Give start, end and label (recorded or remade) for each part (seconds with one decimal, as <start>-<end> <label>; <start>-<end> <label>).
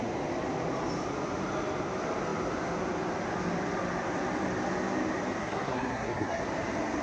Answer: 0.0-5.4 recorded; 5.4-6.4 remade; 6.4-7.0 recorded